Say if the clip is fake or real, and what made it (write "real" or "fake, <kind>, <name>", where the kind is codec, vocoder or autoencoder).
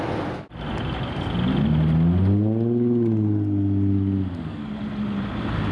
real